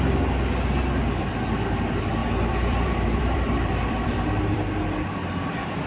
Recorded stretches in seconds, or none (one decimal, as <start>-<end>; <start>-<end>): 0.0-2.2